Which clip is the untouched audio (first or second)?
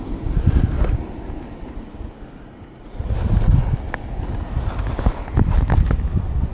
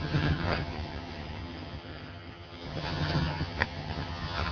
first